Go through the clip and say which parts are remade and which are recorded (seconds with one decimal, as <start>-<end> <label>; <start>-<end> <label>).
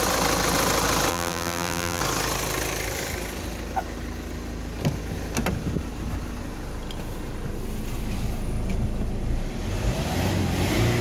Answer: 0.0-1.1 recorded; 1.1-2.0 remade; 2.0-11.0 recorded